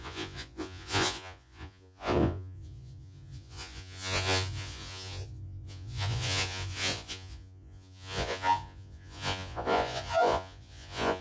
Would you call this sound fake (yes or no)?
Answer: yes